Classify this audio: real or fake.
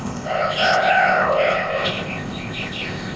fake